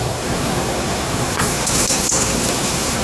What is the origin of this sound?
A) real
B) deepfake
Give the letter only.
B